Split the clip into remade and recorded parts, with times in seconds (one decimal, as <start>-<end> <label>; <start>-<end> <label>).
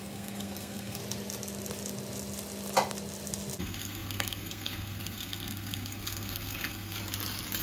0.0-1.0 remade; 1.0-3.6 recorded; 3.6-7.0 remade; 7.0-7.6 recorded